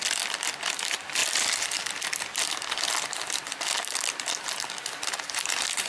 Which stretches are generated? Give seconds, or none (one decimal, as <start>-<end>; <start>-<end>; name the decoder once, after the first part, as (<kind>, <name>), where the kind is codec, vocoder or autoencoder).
none